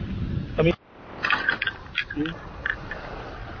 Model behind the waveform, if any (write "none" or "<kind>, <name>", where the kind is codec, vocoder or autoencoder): none